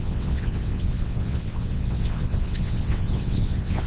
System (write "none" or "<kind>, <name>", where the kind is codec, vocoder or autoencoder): vocoder, WaveNeXt